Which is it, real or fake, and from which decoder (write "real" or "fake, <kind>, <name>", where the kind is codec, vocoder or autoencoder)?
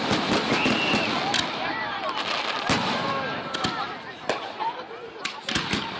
real